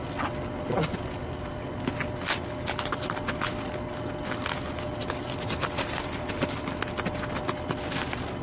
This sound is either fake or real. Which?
real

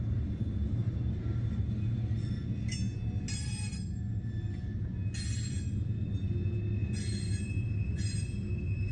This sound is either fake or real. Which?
real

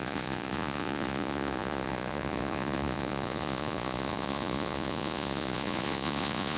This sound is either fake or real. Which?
fake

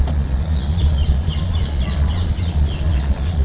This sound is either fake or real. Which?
fake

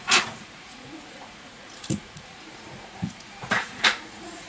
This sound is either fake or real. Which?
fake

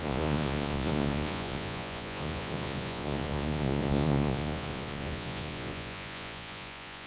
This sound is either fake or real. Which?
fake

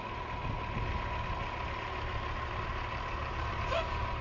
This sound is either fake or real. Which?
real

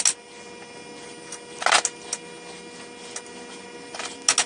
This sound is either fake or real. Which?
real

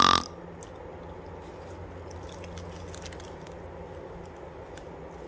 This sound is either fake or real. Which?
real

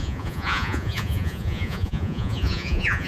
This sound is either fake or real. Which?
fake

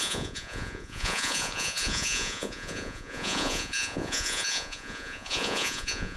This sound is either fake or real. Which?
fake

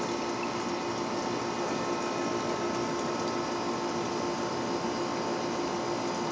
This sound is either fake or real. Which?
real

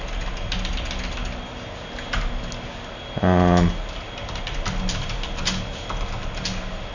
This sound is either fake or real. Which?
real